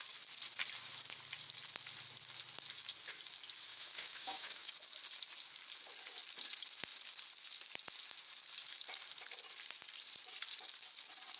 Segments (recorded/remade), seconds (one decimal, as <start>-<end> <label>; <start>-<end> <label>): 0.0-3.7 recorded; 3.7-4.7 remade; 4.7-11.4 recorded